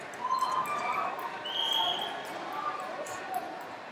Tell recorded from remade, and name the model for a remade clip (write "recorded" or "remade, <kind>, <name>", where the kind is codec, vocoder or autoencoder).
recorded